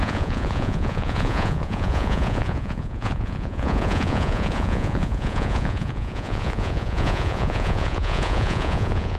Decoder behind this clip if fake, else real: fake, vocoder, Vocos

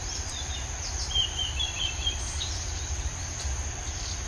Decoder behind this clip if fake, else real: fake, vocoder, BigVGAN v2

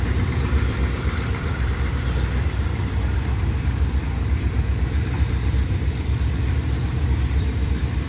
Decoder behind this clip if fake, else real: fake, vocoder, BigVGAN v2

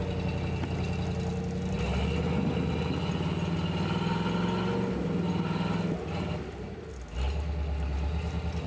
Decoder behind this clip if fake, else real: real